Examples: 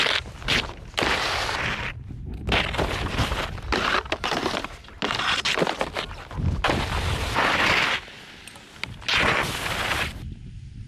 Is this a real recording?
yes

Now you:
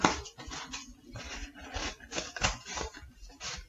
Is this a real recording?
yes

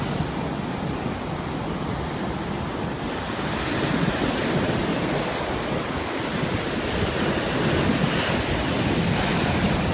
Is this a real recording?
yes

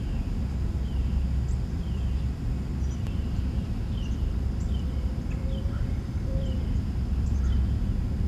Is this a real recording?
no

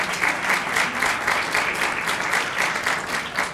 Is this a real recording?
no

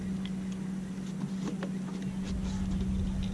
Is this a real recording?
yes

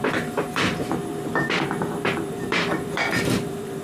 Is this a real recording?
no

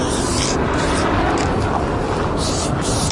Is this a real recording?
yes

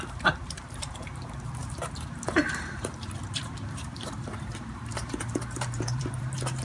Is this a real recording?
no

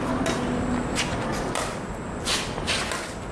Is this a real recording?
yes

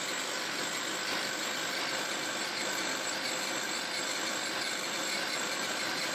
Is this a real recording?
no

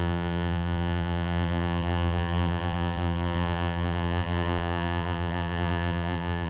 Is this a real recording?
no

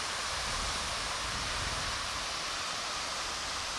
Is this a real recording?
no